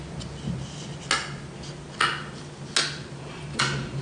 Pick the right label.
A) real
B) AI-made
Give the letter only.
A